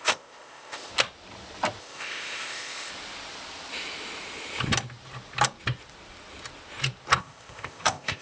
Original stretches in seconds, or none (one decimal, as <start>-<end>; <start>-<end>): 0.9-1.8; 2.9-7.2